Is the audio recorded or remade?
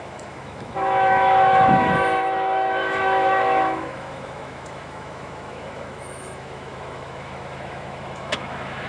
remade